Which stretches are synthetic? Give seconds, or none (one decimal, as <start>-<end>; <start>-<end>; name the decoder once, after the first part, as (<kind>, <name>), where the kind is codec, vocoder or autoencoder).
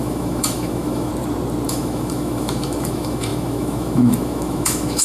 0.0-1.1 (autoencoder, DAC-VAE); 1.7-5.0